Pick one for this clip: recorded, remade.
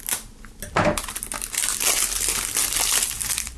recorded